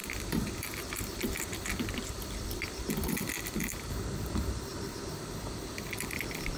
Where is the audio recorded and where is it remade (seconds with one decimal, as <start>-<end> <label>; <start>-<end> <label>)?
0.0-4.7 remade; 4.7-5.7 recorded; 5.7-6.6 remade